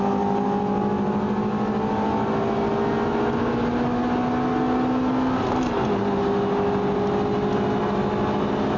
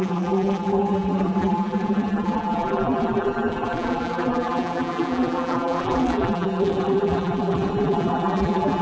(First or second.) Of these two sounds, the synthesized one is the second